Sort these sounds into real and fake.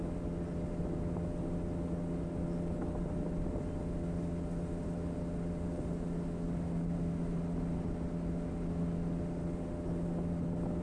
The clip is real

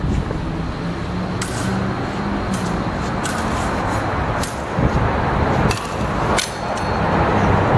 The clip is real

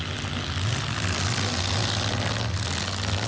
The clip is real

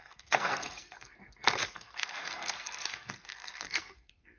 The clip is fake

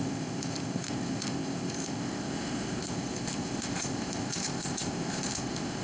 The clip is fake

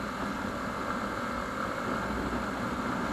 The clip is real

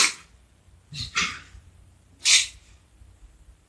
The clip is real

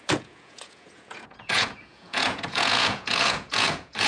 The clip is fake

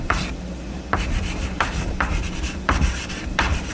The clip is fake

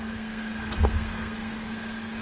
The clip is fake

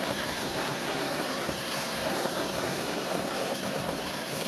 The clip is fake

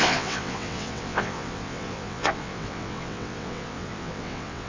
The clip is fake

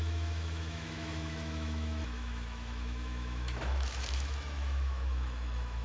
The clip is fake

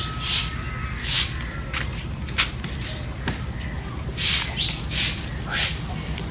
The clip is real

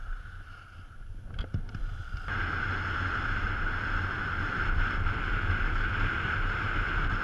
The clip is real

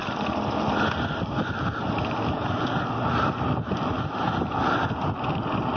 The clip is real